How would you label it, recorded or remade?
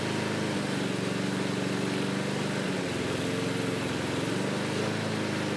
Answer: recorded